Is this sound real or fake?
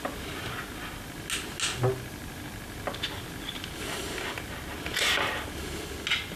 real